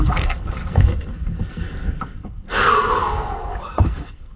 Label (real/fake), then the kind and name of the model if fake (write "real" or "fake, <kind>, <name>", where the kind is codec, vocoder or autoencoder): fake, codec, SNAC